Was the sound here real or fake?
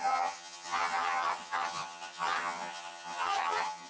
fake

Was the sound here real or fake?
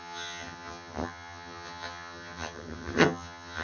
fake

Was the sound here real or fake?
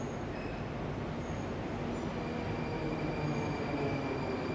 real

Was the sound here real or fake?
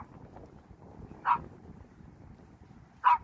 real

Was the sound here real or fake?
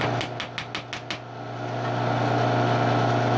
real